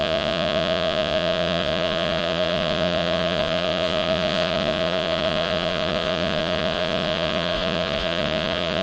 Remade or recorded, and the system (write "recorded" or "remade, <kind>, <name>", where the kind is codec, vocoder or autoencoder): remade, vocoder, Vocos